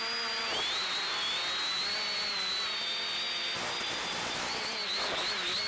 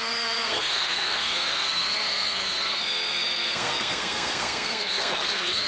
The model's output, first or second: second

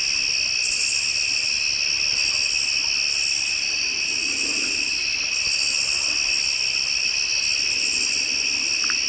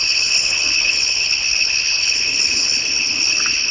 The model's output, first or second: second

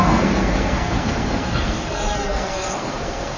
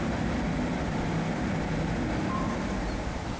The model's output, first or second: first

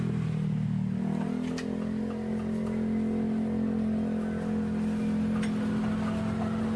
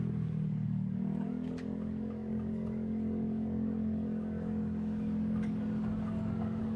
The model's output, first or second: second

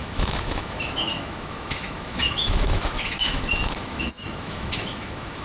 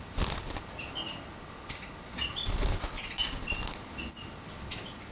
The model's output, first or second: first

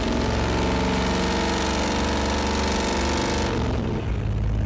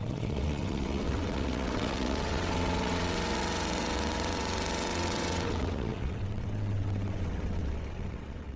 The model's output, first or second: second